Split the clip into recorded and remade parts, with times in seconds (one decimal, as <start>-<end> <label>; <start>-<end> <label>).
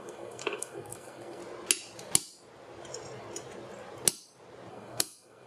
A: 0.0-1.4 remade; 1.4-4.7 recorded; 4.7-5.5 remade